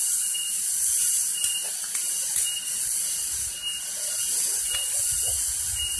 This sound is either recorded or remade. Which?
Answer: recorded